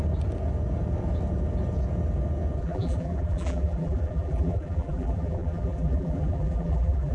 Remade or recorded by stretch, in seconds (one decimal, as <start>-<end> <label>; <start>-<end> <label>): 0.0-2.6 recorded; 2.6-7.1 remade